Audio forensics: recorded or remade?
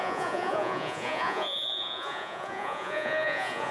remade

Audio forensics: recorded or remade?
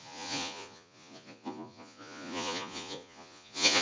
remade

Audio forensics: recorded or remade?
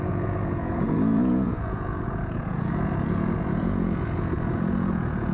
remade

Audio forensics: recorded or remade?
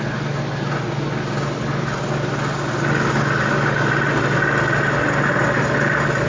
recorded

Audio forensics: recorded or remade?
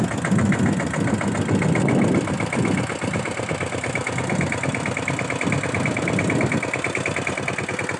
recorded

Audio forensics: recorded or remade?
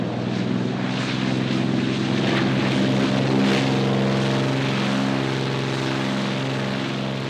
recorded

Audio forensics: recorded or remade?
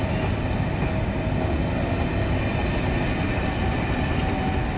recorded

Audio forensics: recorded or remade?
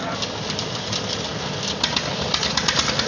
recorded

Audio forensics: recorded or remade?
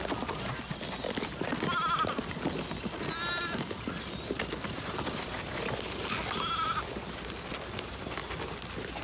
recorded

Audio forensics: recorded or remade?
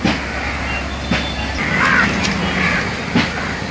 recorded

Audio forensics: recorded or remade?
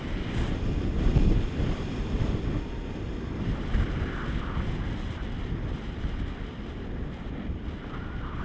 recorded